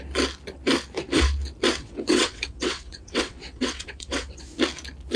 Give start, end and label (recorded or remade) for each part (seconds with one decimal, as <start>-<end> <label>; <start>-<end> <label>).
0.0-1.8 recorded; 1.8-4.4 remade; 4.4-5.2 recorded